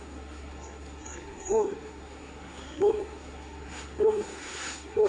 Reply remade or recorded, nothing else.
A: remade